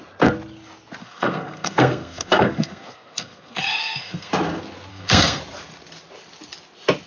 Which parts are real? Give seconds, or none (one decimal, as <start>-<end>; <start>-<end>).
0.0-1.0; 4.3-4.9; 5.4-7.1